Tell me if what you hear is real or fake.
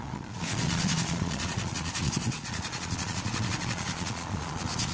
fake